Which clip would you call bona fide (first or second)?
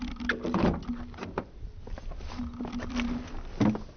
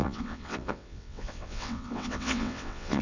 first